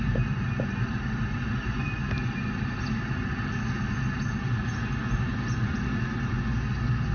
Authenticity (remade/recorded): recorded